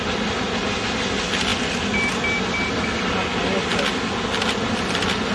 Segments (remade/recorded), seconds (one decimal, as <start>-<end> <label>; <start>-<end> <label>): 0.0-5.3 recorded